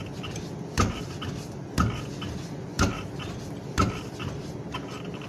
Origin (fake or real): real